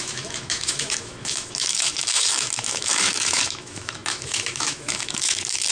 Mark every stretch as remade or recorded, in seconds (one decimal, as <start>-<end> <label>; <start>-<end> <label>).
0.0-5.7 remade